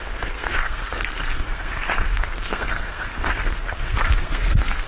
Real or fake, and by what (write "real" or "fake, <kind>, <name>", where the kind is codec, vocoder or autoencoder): fake, codec, SNAC